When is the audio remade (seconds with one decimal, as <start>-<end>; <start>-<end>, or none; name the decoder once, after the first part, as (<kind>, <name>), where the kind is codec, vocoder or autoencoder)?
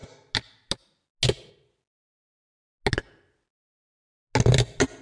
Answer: none